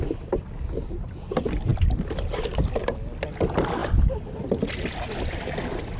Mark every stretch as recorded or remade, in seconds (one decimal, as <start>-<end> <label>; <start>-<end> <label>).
0.0-6.0 recorded